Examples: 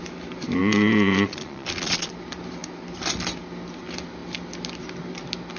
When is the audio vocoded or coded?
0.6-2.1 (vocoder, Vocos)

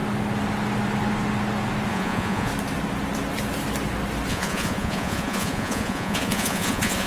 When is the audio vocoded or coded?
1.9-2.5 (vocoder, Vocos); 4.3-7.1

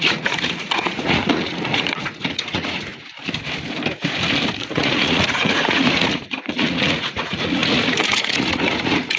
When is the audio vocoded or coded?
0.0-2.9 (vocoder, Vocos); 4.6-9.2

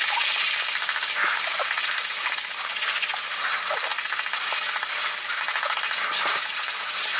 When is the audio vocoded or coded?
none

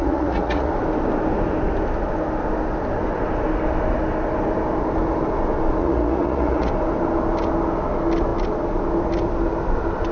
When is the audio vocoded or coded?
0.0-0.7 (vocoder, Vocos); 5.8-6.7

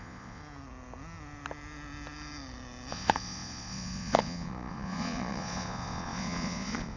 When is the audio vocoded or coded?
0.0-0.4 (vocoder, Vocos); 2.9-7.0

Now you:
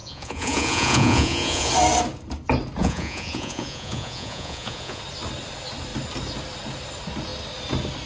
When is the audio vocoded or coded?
0.0-1.7 (vocoder, Vocos); 2.8-5.0